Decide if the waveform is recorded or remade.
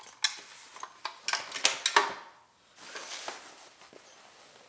recorded